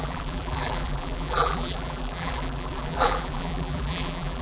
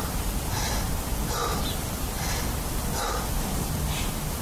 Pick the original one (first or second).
second